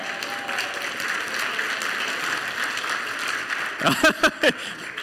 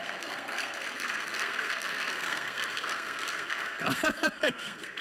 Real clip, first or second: first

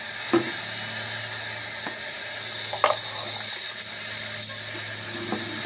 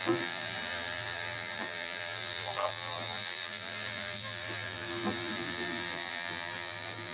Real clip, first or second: first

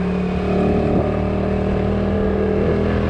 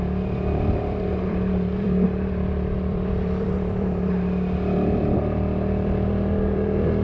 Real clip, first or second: first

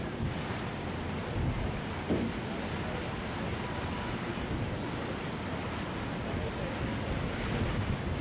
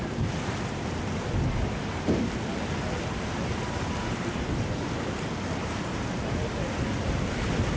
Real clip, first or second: first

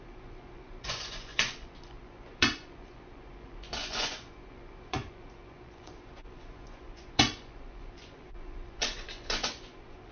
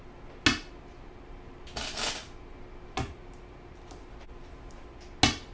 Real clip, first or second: second